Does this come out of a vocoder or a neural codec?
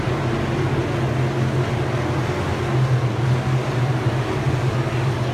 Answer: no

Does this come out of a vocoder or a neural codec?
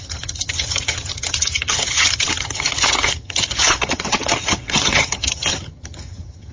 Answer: yes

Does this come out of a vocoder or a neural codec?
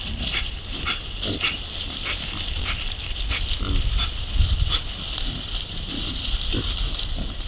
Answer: no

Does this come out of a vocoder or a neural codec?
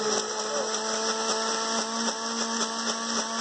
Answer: no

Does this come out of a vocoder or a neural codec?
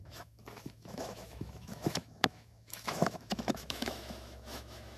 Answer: yes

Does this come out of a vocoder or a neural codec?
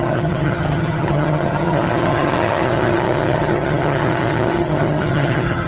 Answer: yes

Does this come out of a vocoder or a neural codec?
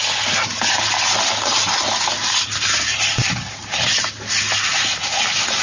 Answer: no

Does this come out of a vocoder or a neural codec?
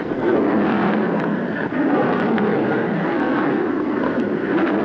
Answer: yes